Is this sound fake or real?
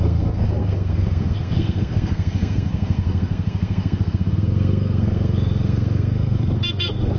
fake